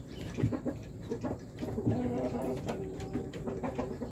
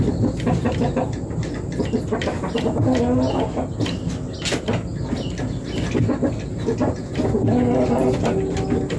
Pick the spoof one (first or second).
first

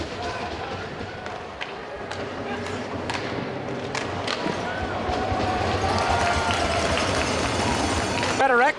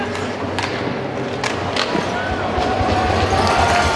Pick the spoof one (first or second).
first